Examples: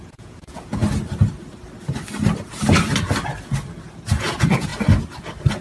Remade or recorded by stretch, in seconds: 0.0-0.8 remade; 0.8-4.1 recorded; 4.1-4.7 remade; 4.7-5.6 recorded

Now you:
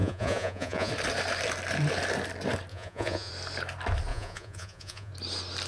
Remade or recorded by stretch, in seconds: 0.0-0.9 remade; 0.9-2.7 recorded; 2.7-3.3 remade; 3.3-4.1 recorded; 4.1-5.1 remade; 5.1-5.7 recorded

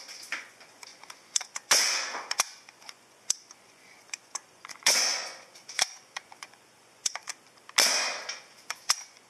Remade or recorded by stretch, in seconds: 0.0-7.3 remade; 7.3-8.3 recorded; 8.3-9.3 remade

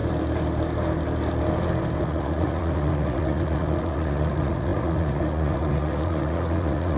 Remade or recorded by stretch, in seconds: 0.0-2.0 recorded; 2.0-7.0 remade

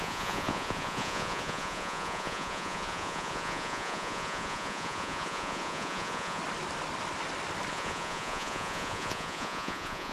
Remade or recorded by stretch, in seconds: 0.0-6.4 remade; 6.4-7.7 recorded; 7.7-10.1 remade